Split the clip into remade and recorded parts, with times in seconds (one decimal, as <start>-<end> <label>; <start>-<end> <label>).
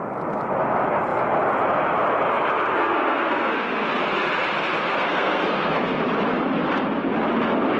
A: 0.0-2.8 recorded; 2.8-4.0 remade; 4.0-4.9 recorded; 4.9-6.0 remade; 6.0-7.8 recorded